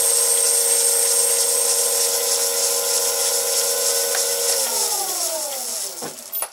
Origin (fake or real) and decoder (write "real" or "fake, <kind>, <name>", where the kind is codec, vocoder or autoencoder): real